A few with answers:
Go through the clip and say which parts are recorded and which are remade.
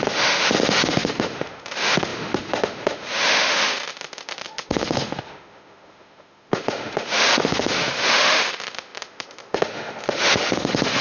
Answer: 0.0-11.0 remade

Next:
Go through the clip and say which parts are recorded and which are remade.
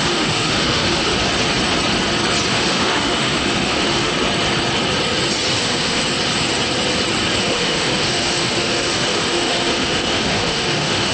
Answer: 0.0-1.1 remade; 1.1-2.5 recorded; 2.5-4.1 remade; 4.1-5.6 recorded; 5.6-6.0 remade; 6.0-7.4 recorded; 7.4-11.1 remade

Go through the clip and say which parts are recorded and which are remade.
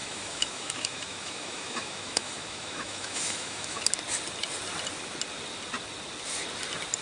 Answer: 0.0-3.8 remade; 3.8-7.0 recorded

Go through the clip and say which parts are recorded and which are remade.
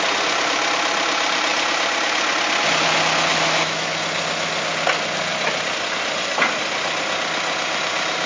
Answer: 0.0-3.3 recorded; 3.3-4.0 remade; 4.0-8.3 recorded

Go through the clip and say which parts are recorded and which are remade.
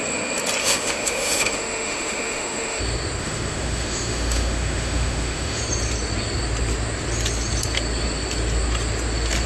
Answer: 0.0-0.6 recorded; 0.6-2.8 remade; 2.8-3.2 recorded; 3.2-5.6 remade; 5.6-9.5 recorded